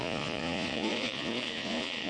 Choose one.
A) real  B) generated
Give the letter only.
B